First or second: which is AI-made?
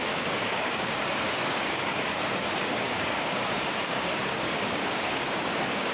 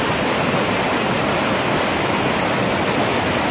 first